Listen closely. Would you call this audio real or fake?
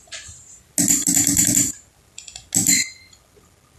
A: real